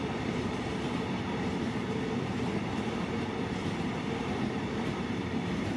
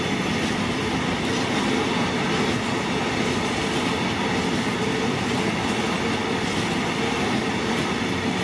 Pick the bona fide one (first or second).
second